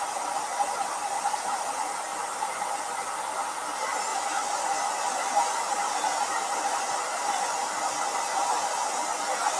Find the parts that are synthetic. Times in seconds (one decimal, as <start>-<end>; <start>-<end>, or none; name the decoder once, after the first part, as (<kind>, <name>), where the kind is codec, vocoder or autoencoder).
2.1-2.6 (vocoder, BigVGAN v2); 4.1-7.9